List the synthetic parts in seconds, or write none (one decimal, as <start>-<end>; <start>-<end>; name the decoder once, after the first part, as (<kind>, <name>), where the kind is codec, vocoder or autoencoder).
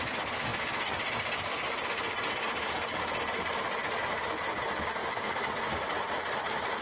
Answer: 5.0-6.1 (vocoder, BigVGAN v2)